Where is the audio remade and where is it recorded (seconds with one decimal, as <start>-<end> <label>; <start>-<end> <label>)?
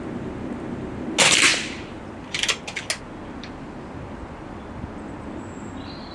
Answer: 0.0-6.1 recorded